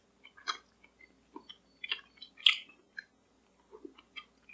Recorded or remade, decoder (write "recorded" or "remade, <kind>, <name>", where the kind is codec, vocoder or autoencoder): recorded